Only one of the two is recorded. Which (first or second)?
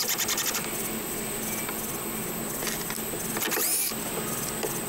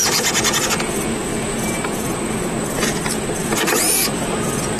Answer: first